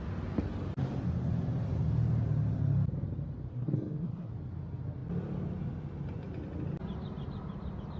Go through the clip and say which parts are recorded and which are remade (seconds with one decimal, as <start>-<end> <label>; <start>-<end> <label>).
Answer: 0.0-3.5 recorded; 3.5-4.3 remade; 4.3-8.0 recorded